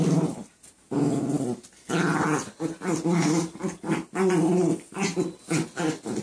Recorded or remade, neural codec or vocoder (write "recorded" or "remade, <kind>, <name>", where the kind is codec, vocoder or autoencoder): recorded